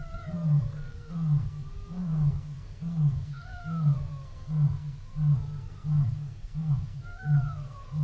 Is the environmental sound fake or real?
fake